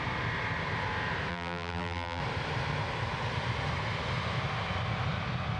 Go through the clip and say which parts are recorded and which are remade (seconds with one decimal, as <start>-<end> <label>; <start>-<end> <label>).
0.0-1.3 recorded; 1.3-2.2 remade; 2.2-5.6 recorded